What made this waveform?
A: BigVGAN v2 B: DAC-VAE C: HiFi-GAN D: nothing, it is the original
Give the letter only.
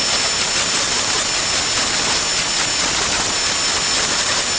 D